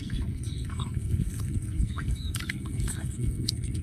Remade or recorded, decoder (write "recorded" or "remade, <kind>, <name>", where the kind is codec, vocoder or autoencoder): remade, codec, SNAC